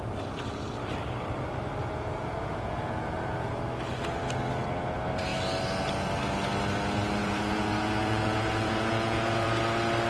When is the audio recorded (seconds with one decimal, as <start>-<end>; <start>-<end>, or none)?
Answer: 0.0-1.8; 3.6-7.2; 9.6-10.1